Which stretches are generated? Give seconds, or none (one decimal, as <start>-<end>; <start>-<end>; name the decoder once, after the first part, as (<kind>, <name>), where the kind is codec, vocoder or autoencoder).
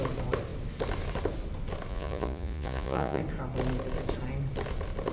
1.9-3.2 (vocoder, Vocos)